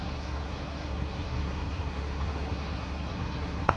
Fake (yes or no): yes